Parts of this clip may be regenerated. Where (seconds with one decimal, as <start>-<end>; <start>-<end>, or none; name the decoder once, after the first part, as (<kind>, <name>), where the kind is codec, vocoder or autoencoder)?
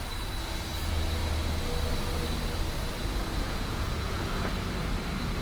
3.2-4.5 (vocoder, Vocos)